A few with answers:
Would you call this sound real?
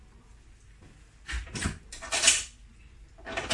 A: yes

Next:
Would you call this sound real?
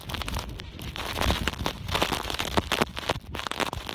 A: yes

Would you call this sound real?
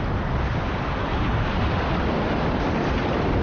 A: yes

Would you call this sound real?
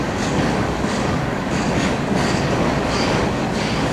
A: no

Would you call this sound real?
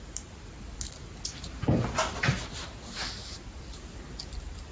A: yes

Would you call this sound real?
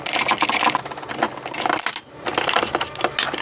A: yes